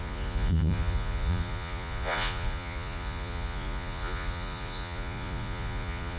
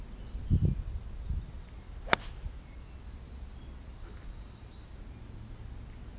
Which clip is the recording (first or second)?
second